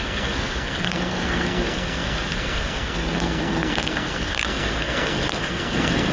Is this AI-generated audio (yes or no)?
yes